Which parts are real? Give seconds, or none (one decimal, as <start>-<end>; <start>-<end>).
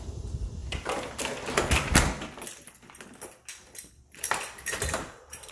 0.6-3.9